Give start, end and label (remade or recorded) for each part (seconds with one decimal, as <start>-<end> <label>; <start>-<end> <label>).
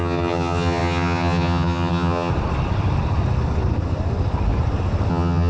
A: 0.0-2.3 remade; 2.3-5.1 recorded; 5.1-5.5 remade